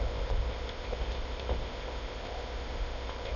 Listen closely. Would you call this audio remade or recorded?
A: remade